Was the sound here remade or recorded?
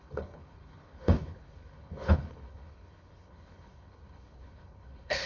remade